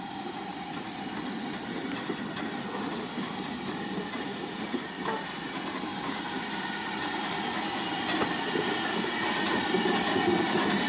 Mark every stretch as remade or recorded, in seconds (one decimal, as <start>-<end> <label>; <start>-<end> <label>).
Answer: 0.0-0.5 recorded; 0.5-5.4 remade; 5.4-5.9 recorded; 5.9-6.6 remade; 6.6-10.9 recorded